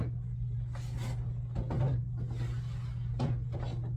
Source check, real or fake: real